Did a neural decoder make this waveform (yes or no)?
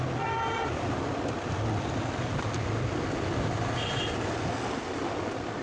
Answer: no